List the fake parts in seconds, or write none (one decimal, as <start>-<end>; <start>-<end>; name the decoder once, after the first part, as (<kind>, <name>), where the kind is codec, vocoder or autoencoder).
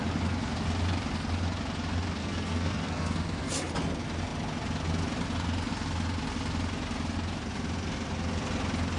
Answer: 2.2-3.5 (codec, SNAC)